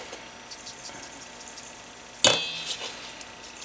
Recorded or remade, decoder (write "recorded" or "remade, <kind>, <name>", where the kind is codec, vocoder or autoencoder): recorded